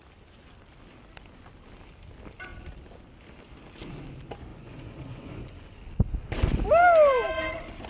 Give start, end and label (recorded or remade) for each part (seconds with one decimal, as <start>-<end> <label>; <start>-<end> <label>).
0.0-4.5 recorded; 4.5-5.8 remade; 5.8-7.9 recorded